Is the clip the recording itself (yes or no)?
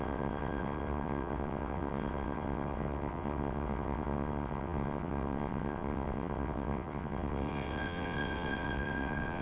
no